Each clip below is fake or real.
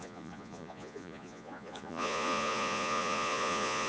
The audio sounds fake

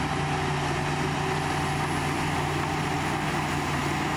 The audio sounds real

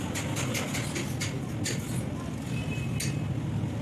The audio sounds real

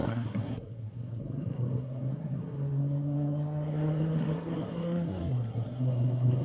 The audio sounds fake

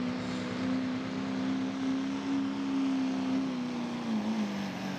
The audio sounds real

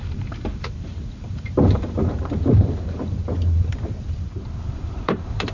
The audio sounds fake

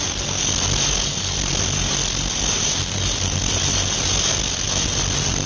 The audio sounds real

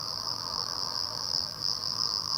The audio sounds fake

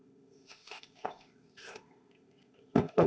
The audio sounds fake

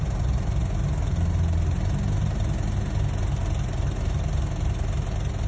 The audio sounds real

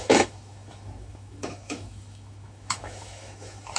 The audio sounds fake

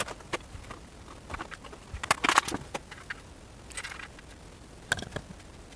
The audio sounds real